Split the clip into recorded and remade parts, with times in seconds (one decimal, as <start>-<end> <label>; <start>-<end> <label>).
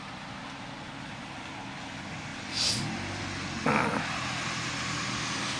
0.0-5.6 recorded